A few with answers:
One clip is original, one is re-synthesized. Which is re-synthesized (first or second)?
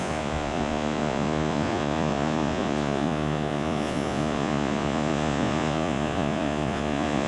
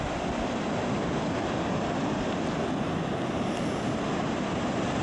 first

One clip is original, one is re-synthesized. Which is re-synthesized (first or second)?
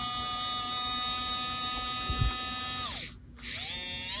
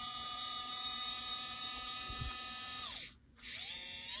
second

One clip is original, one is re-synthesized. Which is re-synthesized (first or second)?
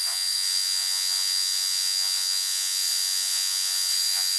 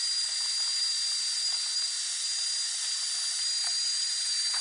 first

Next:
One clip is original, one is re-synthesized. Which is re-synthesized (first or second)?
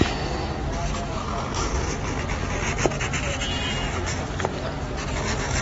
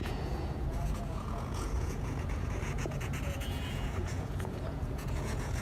second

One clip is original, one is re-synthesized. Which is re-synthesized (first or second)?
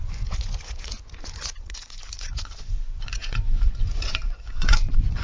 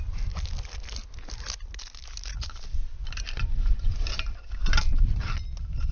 first